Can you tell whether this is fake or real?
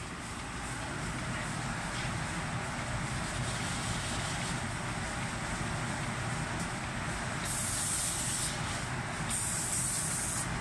real